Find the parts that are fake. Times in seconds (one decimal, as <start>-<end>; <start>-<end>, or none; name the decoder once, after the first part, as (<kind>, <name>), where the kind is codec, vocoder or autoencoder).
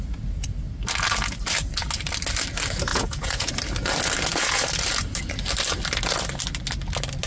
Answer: 2.9-3.5 (vocoder, Vocos)